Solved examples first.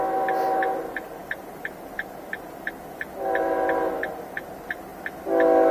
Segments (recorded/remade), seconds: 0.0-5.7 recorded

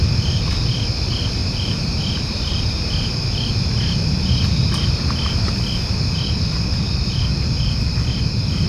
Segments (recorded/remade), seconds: 0.0-1.4 recorded; 1.4-3.5 remade; 3.5-8.7 recorded

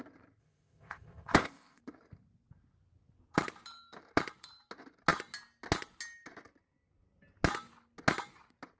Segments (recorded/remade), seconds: 0.0-0.4 recorded; 0.4-1.8 remade; 1.8-8.8 recorded

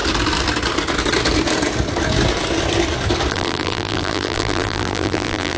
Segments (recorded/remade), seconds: 0.0-3.3 recorded; 3.3-5.6 remade

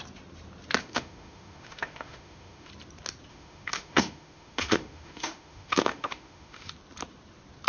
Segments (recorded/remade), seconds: 0.0-0.8 recorded; 0.8-2.7 remade; 2.7-3.3 recorded; 3.3-6.7 remade; 6.7-7.7 recorded

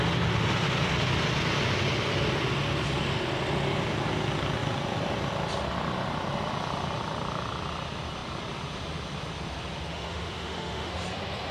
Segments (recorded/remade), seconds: 0.0-9.9 recorded; 9.9-10.9 remade; 10.9-11.5 recorded

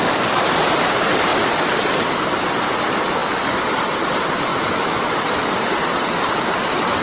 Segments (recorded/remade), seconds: 0.0-4.5 recorded; 4.5-5.1 remade; 5.1-7.0 recorded

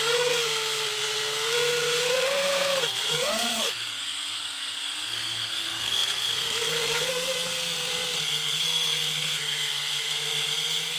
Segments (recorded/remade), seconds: 0.0-11.0 remade